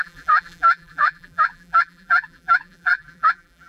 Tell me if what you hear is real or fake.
fake